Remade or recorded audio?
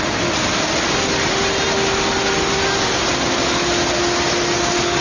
recorded